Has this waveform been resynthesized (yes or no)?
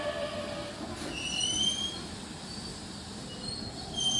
yes